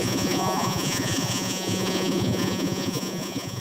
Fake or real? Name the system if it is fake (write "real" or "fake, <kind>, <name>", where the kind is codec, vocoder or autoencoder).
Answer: fake, vocoder, Vocos